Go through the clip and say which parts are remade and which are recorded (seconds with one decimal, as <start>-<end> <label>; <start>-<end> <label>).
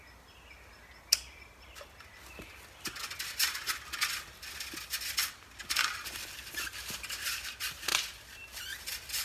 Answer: 0.0-5.6 recorded; 5.6-6.7 remade; 6.7-9.2 recorded